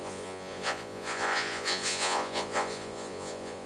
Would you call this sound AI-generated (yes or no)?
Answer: yes